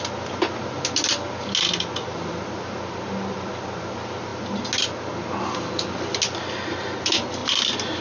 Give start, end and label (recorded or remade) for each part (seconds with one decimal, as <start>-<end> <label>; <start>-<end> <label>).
0.0-8.0 recorded